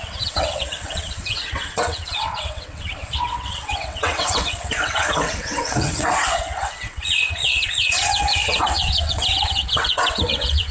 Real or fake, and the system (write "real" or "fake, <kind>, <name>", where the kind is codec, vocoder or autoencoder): fake, vocoder, WaveNeXt